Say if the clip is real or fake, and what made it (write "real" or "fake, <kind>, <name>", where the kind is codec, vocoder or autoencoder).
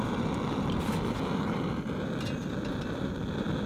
real